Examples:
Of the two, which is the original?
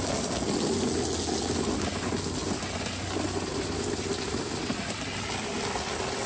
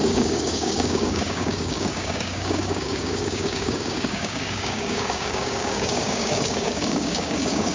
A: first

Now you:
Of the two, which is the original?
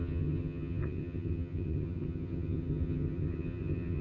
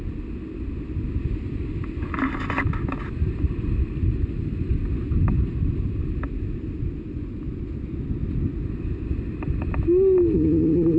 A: second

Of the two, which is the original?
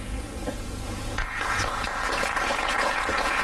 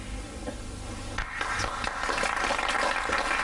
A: second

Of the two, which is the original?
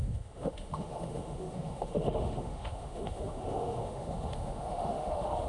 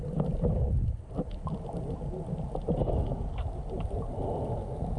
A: second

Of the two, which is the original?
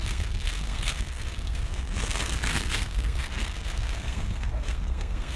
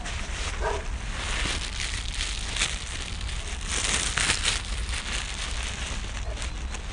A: second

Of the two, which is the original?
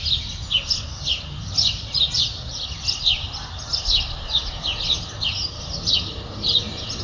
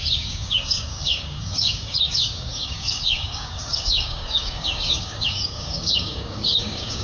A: first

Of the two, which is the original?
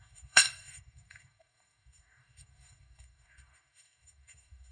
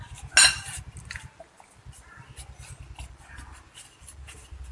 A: second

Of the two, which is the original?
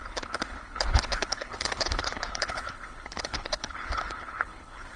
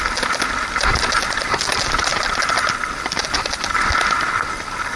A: second